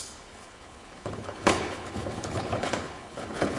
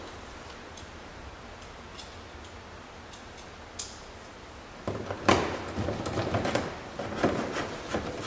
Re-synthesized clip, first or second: first